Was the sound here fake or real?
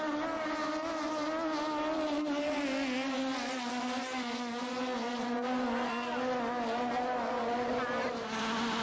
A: real